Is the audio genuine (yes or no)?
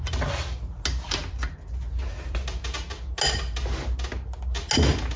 yes